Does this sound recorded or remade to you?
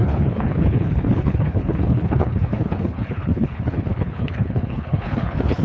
remade